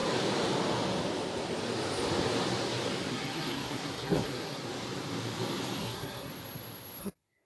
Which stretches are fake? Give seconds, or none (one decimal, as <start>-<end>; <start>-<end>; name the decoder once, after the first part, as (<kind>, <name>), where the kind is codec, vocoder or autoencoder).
3.1-4.6 (codec, SNAC); 5.8-6.3; 7.0-7.5